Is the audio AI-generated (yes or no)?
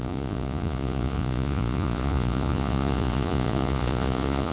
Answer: yes